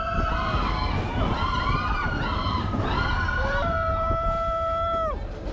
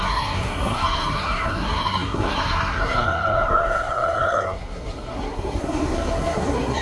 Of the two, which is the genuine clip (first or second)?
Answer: first